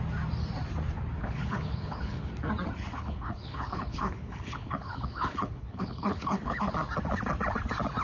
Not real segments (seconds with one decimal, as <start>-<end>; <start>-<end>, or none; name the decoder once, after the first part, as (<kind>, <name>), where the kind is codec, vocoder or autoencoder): 1.2-2.3 (codec, HILCodec); 3.0-6.7